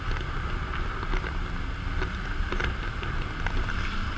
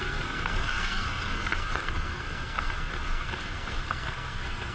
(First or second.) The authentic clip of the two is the first